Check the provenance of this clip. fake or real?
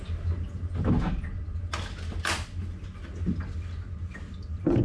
real